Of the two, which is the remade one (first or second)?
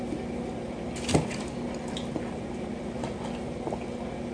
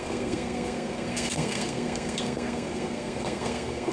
second